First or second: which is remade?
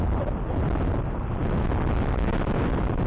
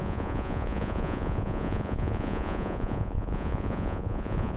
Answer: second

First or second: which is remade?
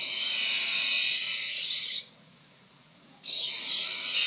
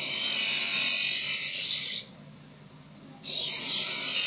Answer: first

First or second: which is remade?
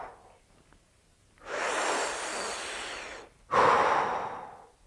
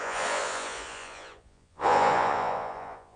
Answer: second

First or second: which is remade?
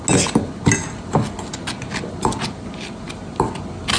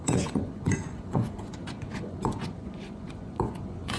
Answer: second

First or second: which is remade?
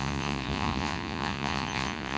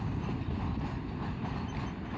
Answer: first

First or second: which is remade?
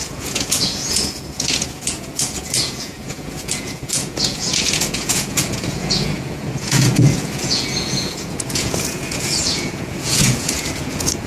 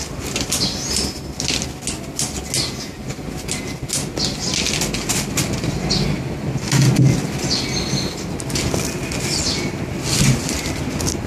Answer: first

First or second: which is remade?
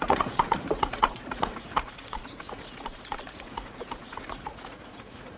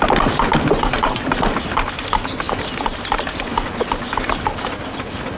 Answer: first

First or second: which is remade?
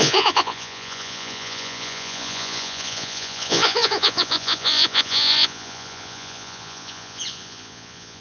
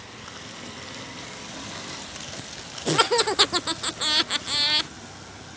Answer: first